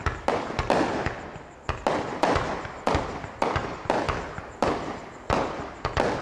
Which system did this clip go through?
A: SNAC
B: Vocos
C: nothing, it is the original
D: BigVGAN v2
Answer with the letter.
C